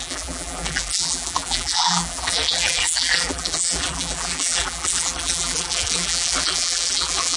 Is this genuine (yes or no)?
no